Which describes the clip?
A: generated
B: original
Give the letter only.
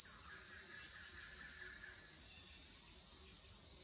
B